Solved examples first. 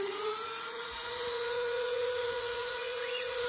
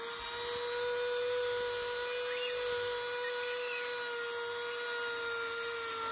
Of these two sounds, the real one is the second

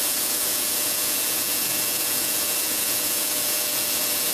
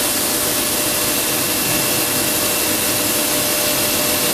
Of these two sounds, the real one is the second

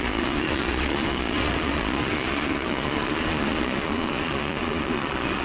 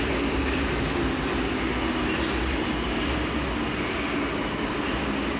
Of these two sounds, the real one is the second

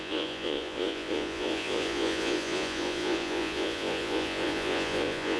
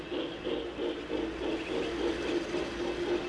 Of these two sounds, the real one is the second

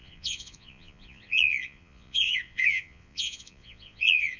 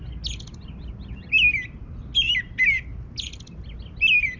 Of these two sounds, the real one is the second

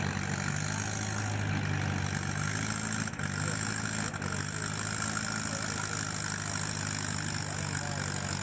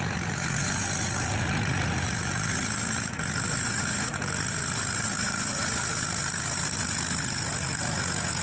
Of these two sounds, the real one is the first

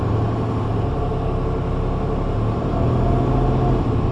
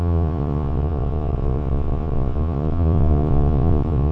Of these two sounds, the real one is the first